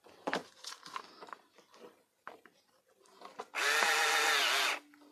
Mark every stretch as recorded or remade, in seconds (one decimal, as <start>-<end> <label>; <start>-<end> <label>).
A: 0.0-5.1 recorded